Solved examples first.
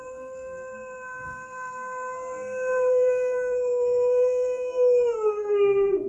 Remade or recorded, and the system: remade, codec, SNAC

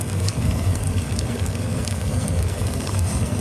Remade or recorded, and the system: remade, codec, SNAC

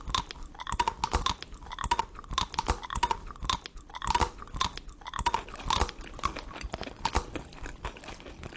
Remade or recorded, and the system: recorded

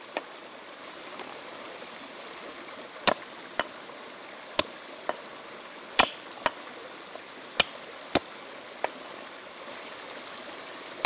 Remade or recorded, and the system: recorded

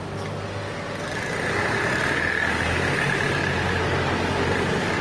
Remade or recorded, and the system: recorded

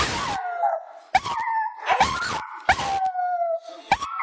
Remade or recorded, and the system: recorded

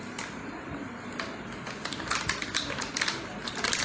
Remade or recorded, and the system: recorded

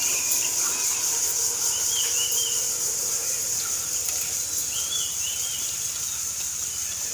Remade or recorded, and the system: remade, vocoder, BigVGAN v2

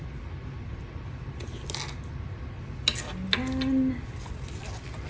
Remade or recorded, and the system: recorded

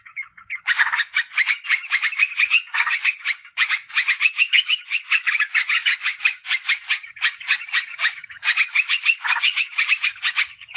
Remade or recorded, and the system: remade, codec, DAC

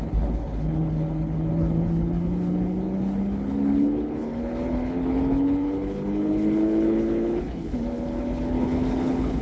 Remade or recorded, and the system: remade, codec, HILCodec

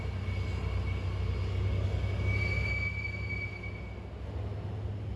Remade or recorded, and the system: recorded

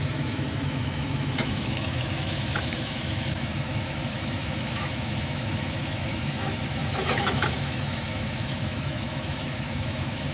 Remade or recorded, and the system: remade, autoencoder, DAC-VAE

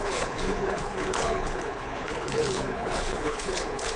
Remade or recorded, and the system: remade, codec, HILCodec